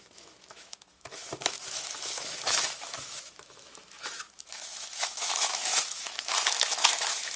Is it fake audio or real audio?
fake